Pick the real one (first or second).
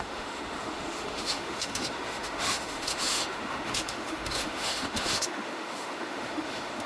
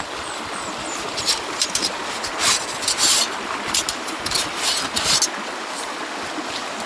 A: second